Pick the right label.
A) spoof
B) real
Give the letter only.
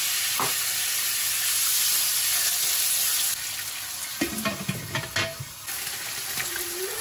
B